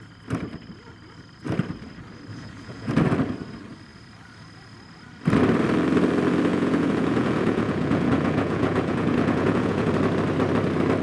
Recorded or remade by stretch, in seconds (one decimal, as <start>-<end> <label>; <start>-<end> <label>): 0.0-2.3 recorded; 2.3-2.9 remade; 2.9-6.5 recorded; 6.5-9.9 remade; 9.9-11.0 recorded